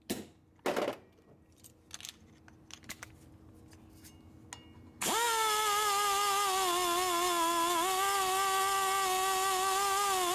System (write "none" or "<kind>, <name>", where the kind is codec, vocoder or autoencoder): none